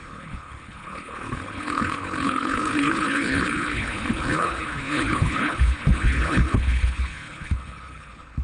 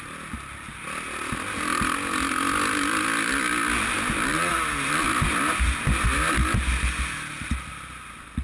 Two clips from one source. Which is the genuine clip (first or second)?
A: second